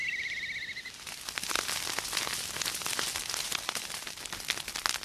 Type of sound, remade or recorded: recorded